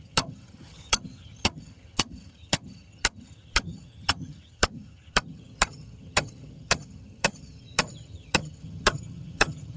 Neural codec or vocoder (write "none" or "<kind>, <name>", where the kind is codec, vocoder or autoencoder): vocoder, HiFi-GAN